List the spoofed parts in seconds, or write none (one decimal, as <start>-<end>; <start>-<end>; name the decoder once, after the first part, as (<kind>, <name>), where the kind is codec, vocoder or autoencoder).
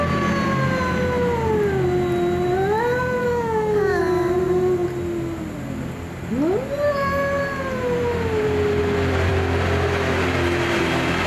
3.2-4.0 (codec, DAC)